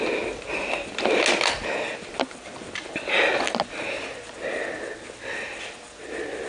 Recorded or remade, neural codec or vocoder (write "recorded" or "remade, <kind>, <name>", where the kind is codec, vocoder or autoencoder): recorded